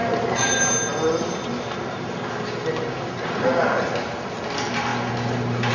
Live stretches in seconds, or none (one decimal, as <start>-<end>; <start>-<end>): 0.0-5.7